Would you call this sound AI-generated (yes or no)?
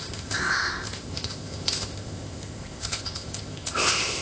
yes